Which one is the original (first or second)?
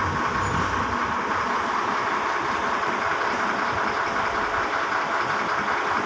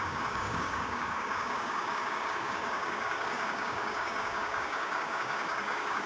first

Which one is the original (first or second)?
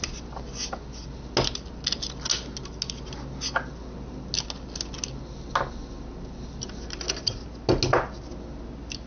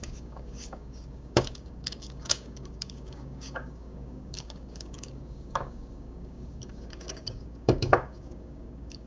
first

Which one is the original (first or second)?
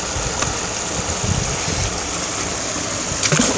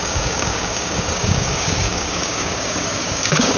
first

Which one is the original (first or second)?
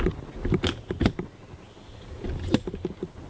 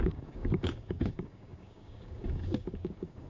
first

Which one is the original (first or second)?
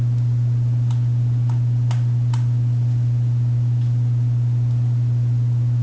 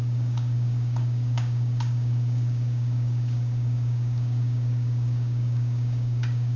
first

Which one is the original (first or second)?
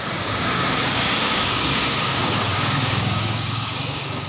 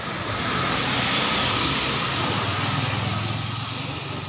second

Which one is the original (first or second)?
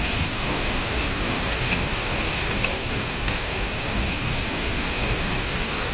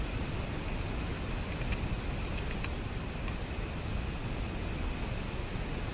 second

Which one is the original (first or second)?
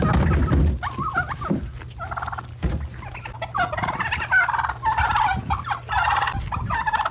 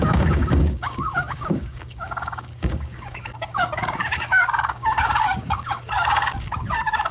first